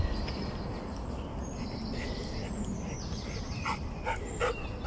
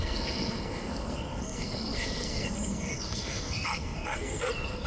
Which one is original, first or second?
first